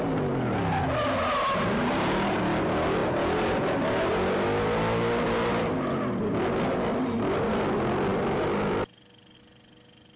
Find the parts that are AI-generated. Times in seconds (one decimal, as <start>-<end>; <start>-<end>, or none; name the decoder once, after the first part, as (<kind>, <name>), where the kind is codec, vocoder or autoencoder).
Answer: none